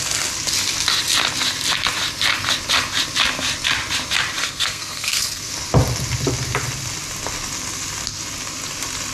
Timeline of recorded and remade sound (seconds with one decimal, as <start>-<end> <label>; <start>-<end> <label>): 0.0-4.4 recorded; 4.4-5.5 remade; 5.5-9.1 recorded